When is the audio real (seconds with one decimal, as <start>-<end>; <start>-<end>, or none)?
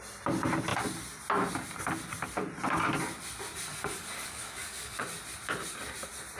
0.0-3.7; 5.0-6.4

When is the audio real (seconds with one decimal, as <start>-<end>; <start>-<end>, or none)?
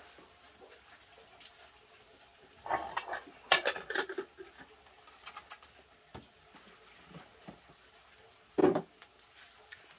0.0-10.0